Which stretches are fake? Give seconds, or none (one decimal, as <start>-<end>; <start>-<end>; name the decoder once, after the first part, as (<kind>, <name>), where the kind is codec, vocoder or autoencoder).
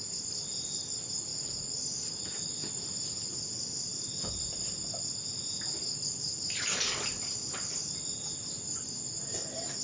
none